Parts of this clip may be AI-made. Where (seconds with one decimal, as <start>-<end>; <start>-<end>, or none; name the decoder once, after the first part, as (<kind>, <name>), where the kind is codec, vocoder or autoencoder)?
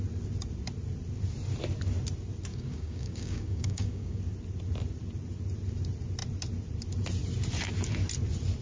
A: 2.5-4.2 (codec, DAC)